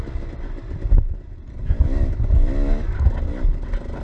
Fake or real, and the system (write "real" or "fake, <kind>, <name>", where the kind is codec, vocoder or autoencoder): real